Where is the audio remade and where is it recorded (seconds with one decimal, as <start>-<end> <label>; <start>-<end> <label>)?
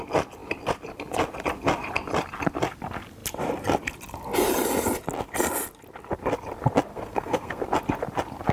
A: 0.0-6.9 recorded; 6.9-7.6 remade; 7.6-8.5 recorded